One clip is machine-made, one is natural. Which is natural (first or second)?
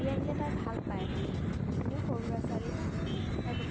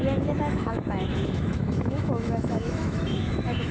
first